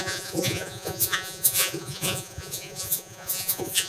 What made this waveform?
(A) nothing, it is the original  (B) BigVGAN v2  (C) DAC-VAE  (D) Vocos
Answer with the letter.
D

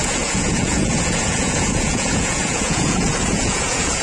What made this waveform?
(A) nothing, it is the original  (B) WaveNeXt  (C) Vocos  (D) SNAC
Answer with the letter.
C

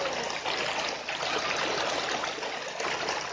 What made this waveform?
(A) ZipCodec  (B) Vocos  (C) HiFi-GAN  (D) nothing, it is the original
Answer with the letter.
D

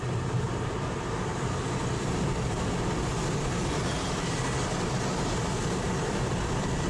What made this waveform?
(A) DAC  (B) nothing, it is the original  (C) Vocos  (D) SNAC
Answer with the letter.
B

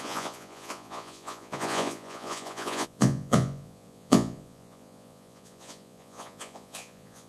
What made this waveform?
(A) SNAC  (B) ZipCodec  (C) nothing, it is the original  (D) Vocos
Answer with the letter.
D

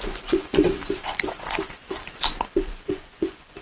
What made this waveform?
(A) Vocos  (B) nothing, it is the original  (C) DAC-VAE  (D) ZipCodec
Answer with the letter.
A